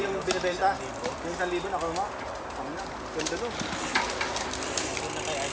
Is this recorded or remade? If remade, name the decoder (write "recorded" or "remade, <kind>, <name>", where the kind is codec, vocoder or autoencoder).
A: recorded